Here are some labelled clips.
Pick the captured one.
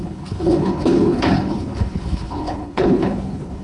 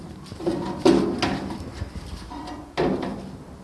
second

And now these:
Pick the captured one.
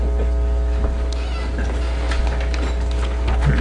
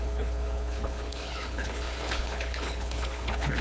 first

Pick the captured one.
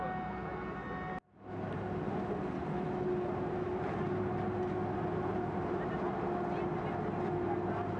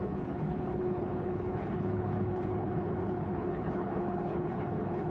first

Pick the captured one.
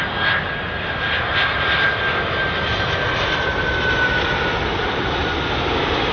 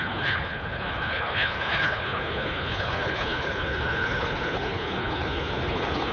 first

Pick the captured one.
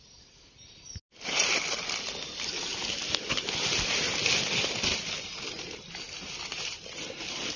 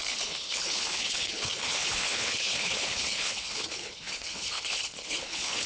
first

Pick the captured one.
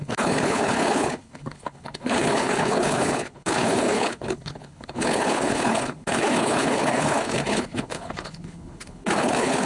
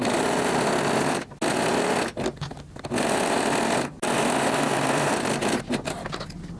second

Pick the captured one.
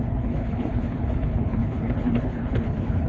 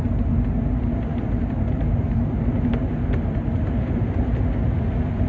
second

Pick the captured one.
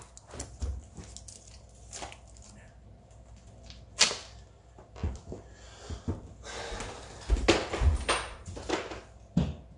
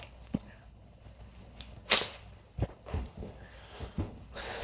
first